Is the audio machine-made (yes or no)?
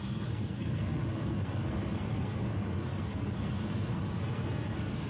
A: yes